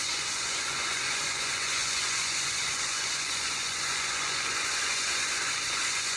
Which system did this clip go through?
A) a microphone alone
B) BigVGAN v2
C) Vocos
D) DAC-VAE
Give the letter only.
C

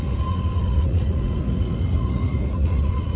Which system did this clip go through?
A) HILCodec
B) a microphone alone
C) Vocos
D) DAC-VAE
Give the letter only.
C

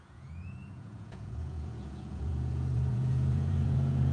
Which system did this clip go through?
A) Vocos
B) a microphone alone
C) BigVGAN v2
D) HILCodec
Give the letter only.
A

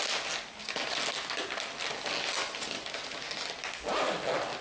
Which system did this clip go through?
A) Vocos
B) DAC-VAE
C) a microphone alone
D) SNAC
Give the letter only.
C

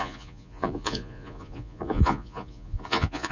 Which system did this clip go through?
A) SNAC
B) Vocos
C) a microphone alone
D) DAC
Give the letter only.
B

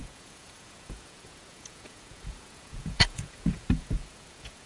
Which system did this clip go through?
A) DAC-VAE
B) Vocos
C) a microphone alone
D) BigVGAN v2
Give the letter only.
B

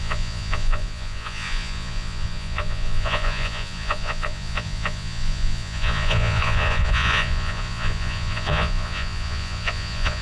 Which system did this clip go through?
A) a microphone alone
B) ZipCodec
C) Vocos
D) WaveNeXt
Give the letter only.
C